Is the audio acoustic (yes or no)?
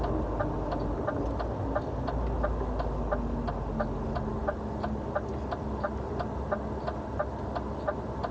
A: yes